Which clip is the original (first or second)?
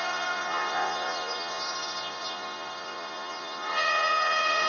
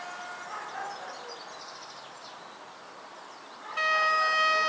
second